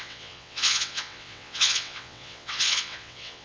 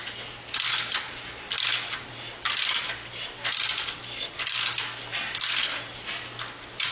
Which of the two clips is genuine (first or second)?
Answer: second